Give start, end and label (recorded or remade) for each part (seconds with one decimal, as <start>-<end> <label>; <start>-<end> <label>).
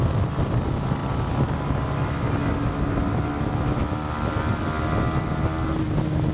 0.0-6.3 recorded